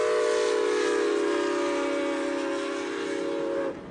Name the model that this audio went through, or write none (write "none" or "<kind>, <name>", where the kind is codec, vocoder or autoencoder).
none